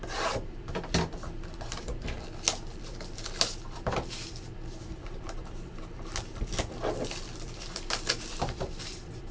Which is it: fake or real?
fake